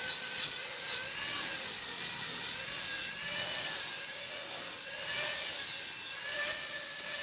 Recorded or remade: recorded